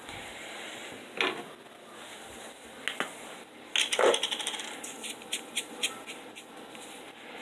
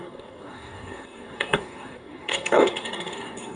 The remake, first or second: second